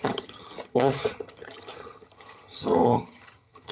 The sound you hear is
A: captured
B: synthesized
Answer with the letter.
B